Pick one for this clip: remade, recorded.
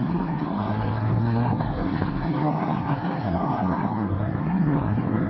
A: remade